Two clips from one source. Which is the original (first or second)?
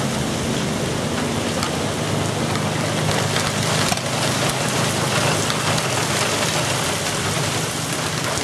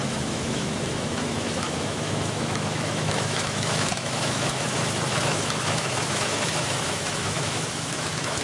first